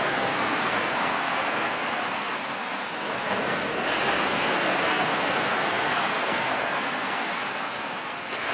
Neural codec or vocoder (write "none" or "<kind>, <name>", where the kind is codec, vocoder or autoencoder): codec, SNAC